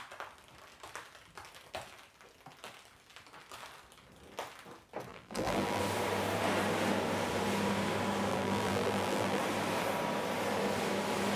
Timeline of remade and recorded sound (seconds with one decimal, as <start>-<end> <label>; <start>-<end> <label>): 0.0-5.1 recorded; 5.1-5.8 remade; 5.8-8.3 recorded; 8.3-9.4 remade; 9.4-11.4 recorded

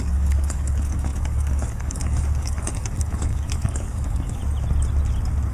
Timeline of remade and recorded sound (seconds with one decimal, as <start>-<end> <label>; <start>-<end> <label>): 0.0-4.4 remade; 4.4-5.5 recorded

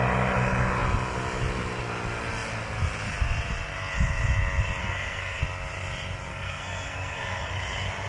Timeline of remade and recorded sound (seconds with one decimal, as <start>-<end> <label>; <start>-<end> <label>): 0.0-4.8 recorded; 4.8-5.4 remade; 5.4-6.3 recorded; 6.3-7.5 remade; 7.5-8.1 recorded